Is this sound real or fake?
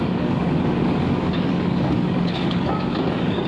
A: fake